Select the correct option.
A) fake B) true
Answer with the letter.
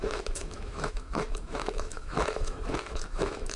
A